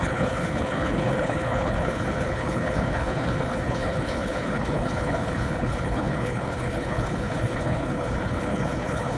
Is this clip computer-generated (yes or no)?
yes